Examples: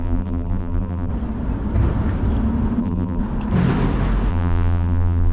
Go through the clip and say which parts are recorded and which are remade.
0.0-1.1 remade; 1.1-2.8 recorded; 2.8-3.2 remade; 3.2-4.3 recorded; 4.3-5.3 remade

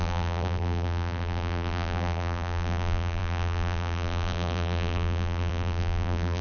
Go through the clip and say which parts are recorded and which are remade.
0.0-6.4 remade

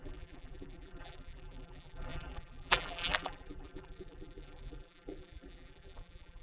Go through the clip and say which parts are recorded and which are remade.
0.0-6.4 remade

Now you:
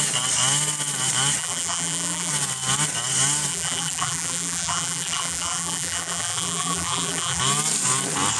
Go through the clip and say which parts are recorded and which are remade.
0.0-1.4 recorded; 1.4-2.3 remade; 2.3-3.5 recorded; 3.5-7.4 remade; 7.4-8.4 recorded

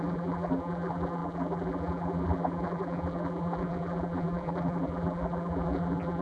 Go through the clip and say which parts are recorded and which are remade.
0.0-6.2 remade

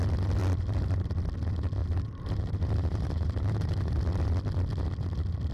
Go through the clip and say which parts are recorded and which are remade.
0.0-0.4 recorded; 0.4-1.1 remade; 1.1-1.8 recorded; 1.8-4.0 remade; 4.0-5.5 recorded